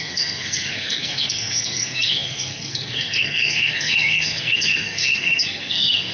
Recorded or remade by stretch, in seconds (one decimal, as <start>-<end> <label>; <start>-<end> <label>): 0.0-6.1 remade